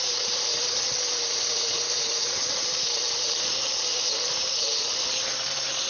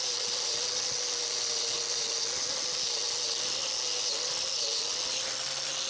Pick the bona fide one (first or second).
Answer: second